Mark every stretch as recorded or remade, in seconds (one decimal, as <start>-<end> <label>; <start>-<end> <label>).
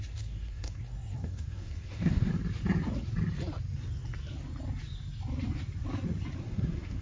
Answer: 0.0-2.3 remade; 2.3-6.4 recorded; 6.4-7.0 remade